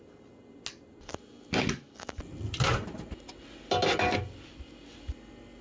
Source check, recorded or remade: recorded